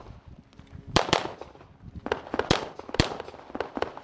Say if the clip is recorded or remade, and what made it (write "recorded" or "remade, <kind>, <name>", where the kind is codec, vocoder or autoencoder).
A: remade, vocoder, BigVGAN v2